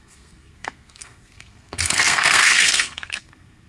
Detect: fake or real fake